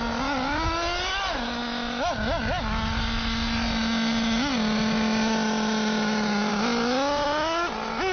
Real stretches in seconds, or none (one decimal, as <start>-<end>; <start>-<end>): 0.0-8.1